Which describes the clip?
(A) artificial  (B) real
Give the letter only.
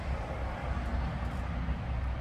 B